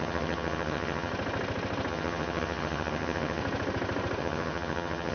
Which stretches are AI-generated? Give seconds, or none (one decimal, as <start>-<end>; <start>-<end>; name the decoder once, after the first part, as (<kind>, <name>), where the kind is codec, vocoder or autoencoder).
0.0-1.1 (vocoder, HiFi-GAN); 1.9-3.4; 4.2-5.1